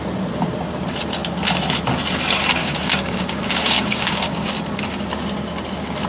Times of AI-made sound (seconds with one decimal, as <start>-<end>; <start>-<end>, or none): 2.6-4.5